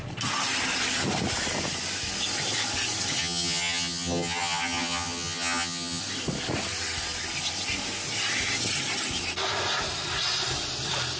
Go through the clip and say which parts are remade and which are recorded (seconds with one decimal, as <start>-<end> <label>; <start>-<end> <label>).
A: 0.0-3.2 recorded; 3.2-6.0 remade; 6.0-11.2 recorded